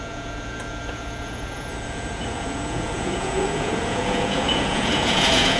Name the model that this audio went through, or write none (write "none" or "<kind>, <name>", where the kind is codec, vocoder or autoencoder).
vocoder, Vocos